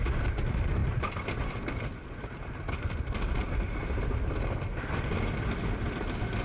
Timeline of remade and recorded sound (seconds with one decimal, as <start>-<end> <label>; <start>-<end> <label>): 0.0-6.4 recorded